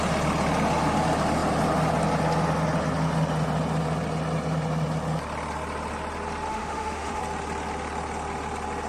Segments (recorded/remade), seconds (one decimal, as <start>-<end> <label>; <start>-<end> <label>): 0.0-6.5 recorded; 6.5-7.2 remade; 7.2-8.9 recorded